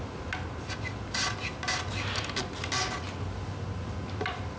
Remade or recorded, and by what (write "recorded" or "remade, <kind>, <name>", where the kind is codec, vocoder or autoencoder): recorded